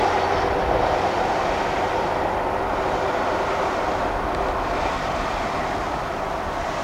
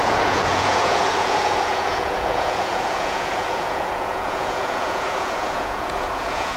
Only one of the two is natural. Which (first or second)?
first